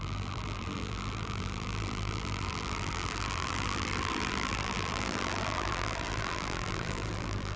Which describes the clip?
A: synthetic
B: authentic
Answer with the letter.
A